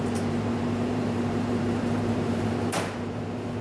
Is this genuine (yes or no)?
no